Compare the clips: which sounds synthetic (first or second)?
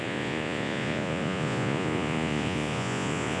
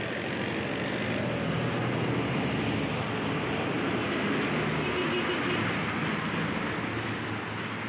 first